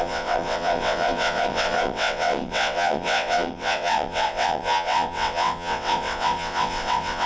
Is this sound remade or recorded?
remade